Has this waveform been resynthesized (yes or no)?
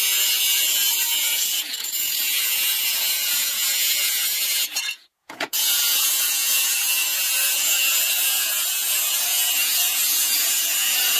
yes